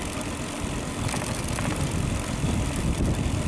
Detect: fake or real real